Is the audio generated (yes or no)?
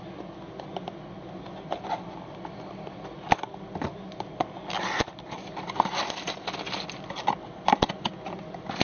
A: no